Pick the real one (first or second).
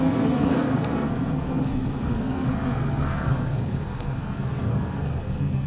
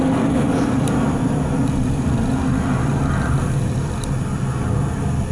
second